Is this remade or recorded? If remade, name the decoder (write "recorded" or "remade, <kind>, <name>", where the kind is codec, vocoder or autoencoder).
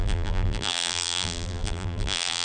remade, vocoder, BigVGAN v2